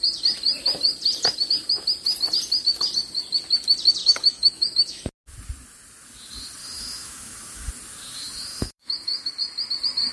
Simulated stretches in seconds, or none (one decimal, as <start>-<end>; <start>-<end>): 4.0-5.0; 6.6-7.7; 8.5-9.3